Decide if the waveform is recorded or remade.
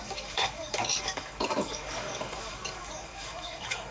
remade